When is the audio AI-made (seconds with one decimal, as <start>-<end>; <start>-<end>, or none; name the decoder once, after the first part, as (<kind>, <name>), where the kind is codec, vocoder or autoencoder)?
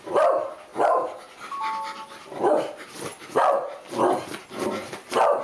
none